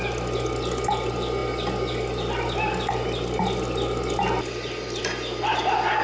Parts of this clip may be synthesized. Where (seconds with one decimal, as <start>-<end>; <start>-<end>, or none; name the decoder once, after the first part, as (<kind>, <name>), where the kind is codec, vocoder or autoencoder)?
none